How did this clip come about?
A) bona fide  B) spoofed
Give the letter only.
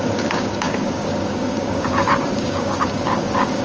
B